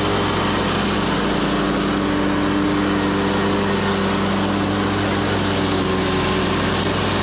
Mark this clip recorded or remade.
recorded